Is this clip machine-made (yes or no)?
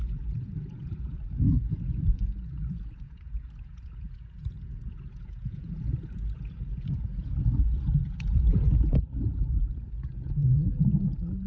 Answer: yes